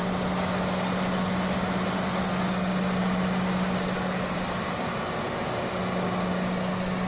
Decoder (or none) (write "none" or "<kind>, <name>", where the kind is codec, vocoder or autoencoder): none